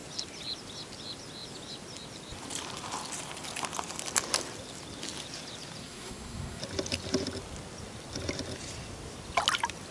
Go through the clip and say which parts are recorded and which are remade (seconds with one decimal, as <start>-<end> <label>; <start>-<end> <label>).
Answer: 0.0-5.8 recorded; 5.8-6.6 remade; 6.6-9.9 recorded